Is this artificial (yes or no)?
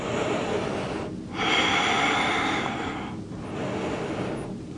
no